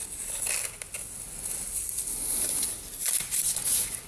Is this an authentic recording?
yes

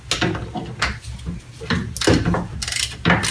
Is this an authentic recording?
yes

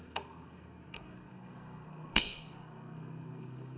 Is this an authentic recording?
no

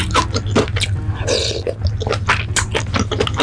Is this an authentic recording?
yes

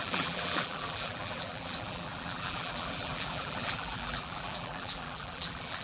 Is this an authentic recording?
no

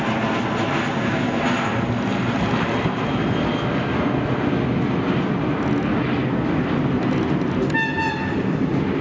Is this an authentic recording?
yes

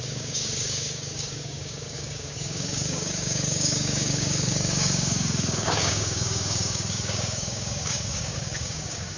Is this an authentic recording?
no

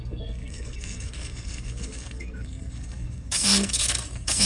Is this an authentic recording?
no